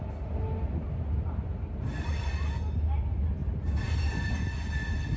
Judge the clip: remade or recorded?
recorded